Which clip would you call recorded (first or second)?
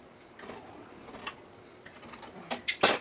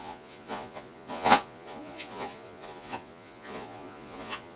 first